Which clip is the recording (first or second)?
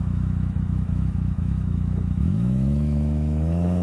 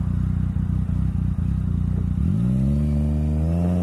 second